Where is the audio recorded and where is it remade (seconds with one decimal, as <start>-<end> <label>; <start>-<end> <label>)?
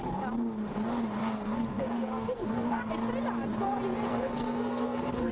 0.0-1.2 recorded; 1.2-2.9 remade; 2.9-4.1 recorded; 4.1-5.3 remade